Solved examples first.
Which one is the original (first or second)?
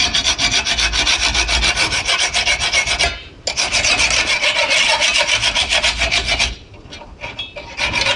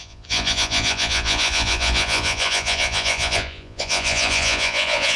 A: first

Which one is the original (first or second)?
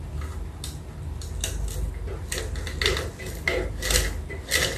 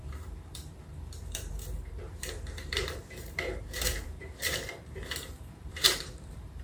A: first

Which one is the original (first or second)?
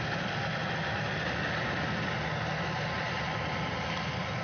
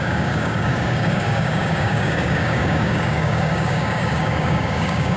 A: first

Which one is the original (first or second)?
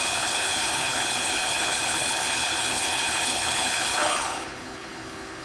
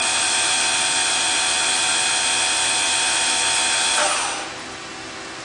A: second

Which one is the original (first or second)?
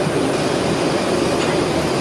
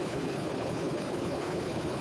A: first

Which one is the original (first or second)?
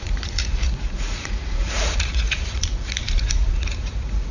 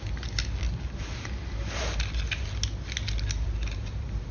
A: second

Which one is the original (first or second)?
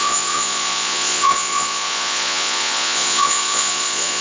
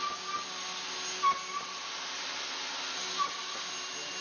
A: second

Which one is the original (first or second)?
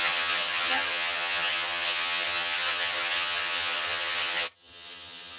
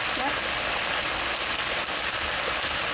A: second